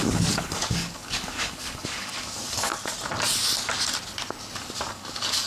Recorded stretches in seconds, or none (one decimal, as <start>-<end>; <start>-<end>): 2.7-4.9

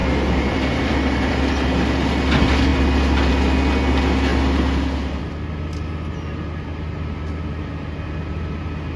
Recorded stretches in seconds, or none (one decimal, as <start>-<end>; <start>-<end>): 1.5-9.0